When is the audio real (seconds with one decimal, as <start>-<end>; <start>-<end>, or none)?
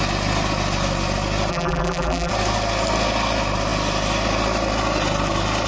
0.0-1.5; 2.3-5.7